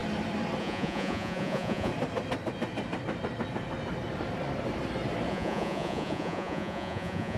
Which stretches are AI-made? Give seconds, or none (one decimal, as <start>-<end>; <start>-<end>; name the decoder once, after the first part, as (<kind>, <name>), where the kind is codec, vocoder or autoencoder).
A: 0.6-1.9 (vocoder, Vocos); 5.3-7.4